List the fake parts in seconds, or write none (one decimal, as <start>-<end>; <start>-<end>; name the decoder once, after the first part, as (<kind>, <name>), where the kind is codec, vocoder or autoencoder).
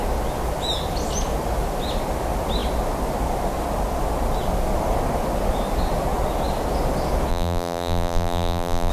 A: 7.3-8.9 (vocoder, BigVGAN v2)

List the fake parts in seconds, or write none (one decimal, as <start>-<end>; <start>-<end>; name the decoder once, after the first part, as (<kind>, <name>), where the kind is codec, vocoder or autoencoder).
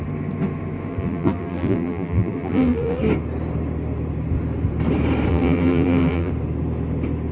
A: 0.9-3.0 (vocoder, BigVGAN v2); 5.3-6.3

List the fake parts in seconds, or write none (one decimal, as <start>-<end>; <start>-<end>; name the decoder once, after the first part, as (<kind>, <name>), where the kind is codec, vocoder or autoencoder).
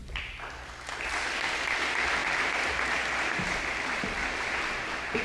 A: 1.1-5.2 (vocoder, BigVGAN v2)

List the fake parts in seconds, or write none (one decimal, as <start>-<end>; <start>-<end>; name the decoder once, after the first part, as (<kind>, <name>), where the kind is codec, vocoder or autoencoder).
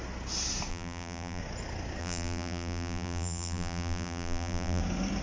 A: 0.7-1.4 (vocoder, BigVGAN v2); 2.0-4.8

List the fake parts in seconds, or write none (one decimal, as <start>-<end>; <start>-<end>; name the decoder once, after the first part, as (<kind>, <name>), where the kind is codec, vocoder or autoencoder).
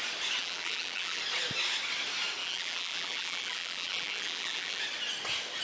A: 0.4-1.2 (vocoder, BigVGAN v2); 2.4-4.8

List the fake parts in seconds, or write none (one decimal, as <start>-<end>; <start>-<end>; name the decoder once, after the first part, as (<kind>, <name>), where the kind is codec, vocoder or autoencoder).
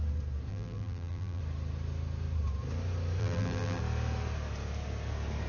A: 0.5-1.4 (vocoder, BigVGAN v2); 3.2-3.8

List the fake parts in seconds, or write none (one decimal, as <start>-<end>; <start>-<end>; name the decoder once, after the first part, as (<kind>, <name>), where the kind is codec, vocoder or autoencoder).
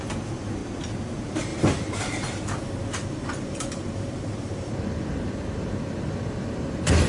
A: 0.0-0.6 (vocoder, BigVGAN v2); 1.1-7.1